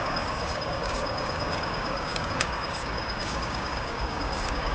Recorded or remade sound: remade